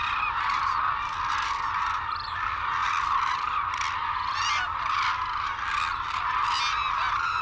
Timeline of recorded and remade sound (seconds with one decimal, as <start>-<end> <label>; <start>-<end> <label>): 0.0-7.4 recorded